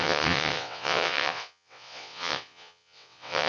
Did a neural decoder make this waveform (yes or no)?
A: yes